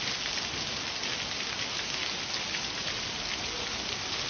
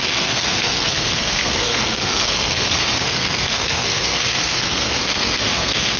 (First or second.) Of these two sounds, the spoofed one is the second